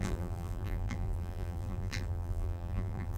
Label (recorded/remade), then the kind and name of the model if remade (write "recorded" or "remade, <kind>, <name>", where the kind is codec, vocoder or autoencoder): remade, vocoder, BigVGAN v2